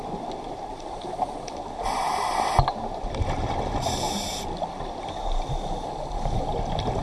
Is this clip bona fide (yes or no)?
yes